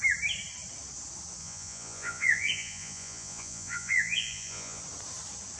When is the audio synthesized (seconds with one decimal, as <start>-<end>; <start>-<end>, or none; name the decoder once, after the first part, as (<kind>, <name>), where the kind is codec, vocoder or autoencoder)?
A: 1.4-4.8 (vocoder, Vocos)